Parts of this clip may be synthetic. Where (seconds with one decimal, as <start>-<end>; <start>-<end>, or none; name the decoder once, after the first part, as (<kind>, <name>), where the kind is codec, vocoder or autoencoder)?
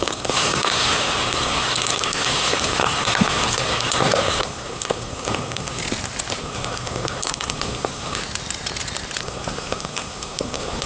0.0-5.8 (codec, SNAC); 6.4-8.2; 9.2-10.9